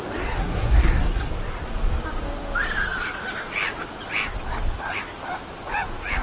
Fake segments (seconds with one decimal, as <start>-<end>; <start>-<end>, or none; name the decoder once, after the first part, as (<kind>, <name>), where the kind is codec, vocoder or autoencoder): 0.4-1.3 (codec, SNAC)